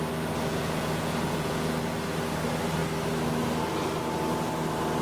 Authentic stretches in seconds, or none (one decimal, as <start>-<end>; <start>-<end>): 0.0-0.5; 1.7-5.0